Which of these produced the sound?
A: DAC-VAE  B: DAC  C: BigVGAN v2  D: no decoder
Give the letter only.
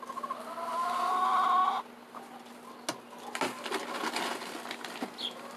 D